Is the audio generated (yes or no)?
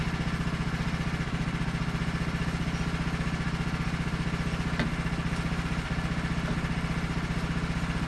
no